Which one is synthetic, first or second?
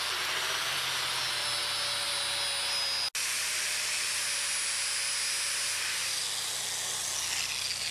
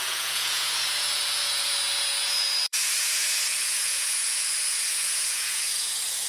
second